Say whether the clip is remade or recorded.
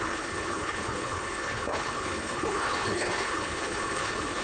remade